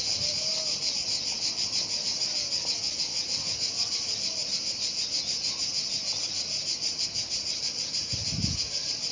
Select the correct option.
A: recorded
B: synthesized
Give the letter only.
A